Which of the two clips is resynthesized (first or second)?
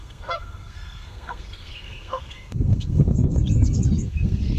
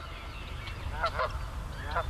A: first